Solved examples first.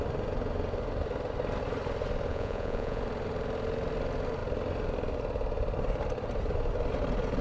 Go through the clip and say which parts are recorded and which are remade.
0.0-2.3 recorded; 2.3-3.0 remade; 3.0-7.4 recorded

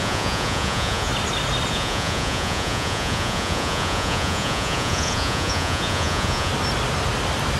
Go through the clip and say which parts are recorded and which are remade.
0.0-1.1 remade; 1.1-1.7 recorded; 1.7-6.5 remade; 6.5-7.6 recorded

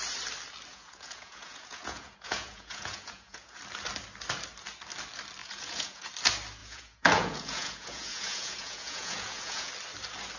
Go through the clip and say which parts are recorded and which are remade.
0.0-0.7 recorded; 0.7-3.6 remade; 3.6-5.4 recorded; 5.4-6.1 remade; 6.1-6.6 recorded; 6.6-9.7 remade; 9.7-10.4 recorded